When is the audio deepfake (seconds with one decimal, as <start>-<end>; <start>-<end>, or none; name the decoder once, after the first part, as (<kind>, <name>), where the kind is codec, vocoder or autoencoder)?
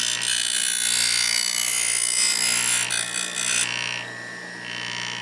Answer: none